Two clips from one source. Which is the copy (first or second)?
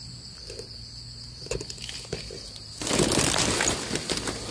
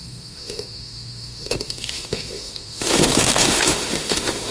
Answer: second